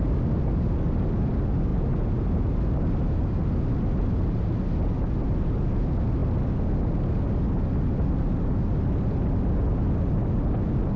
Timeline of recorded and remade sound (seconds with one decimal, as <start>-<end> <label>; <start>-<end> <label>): 0.0-11.0 recorded